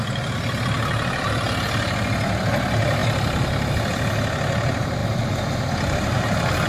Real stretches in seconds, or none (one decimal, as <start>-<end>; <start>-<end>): 0.0-5.0